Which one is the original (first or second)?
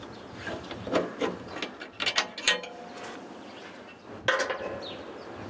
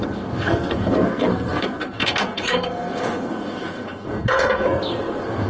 first